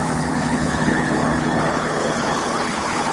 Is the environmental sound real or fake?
fake